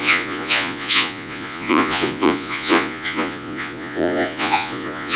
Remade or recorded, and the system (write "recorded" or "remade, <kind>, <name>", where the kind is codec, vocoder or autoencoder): remade, vocoder, Vocos